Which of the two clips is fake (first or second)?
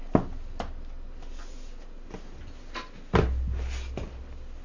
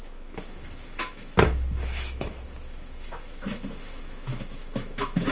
second